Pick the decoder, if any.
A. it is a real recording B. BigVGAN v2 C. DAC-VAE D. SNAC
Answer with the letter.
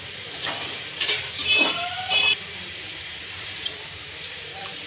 B